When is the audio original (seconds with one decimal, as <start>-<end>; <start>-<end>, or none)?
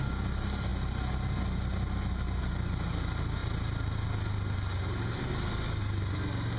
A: 0.0-6.6